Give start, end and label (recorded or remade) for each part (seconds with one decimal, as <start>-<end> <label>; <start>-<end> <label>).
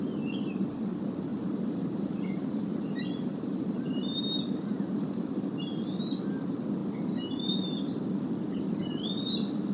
0.0-1.3 recorded; 1.3-5.3 remade; 5.3-9.7 recorded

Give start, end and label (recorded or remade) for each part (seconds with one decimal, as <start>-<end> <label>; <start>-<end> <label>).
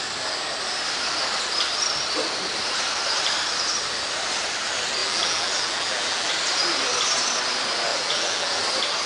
0.0-5.0 recorded; 5.0-6.3 remade; 6.3-7.9 recorded; 7.9-8.6 remade; 8.6-9.1 recorded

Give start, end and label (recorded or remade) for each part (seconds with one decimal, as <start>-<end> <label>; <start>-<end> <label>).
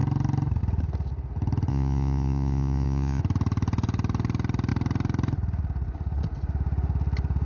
0.0-1.7 recorded; 1.7-3.2 remade; 3.2-7.5 recorded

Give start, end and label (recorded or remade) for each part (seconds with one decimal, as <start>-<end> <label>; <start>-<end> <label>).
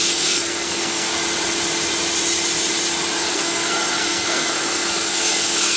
0.0-1.1 remade; 1.1-3.3 recorded; 3.3-5.8 remade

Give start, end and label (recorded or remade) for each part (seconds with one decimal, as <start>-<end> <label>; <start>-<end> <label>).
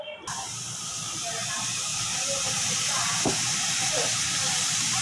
0.0-1.9 recorded; 1.9-5.0 remade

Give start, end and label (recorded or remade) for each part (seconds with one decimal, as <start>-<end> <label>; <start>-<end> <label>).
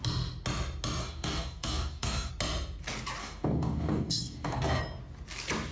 0.0-1.0 recorded; 1.0-2.3 remade; 2.3-3.2 recorded; 3.2-4.8 remade; 4.8-5.7 recorded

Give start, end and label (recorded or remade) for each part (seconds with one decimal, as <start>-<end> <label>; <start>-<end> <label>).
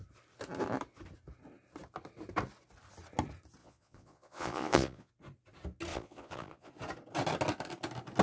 0.0-3.6 recorded; 3.6-5.1 remade; 5.1-5.9 recorded; 5.9-6.7 remade; 6.7-8.2 recorded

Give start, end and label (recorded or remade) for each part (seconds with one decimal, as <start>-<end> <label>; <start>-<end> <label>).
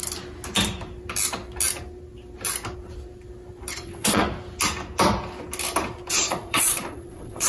0.0-3.7 recorded; 3.7-4.2 remade; 4.2-6.1 recorded; 6.1-7.5 remade